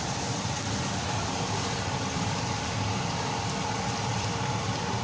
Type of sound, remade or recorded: recorded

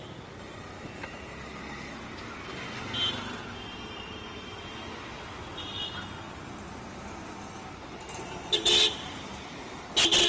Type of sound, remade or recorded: recorded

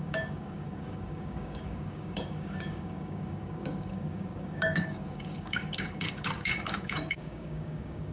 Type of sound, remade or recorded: remade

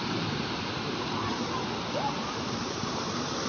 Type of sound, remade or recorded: remade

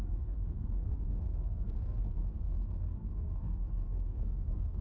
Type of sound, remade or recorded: remade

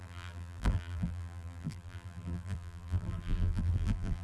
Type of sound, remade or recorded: remade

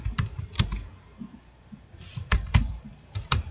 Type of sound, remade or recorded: remade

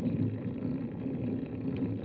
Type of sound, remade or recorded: recorded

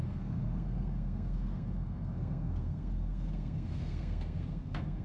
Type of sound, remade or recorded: remade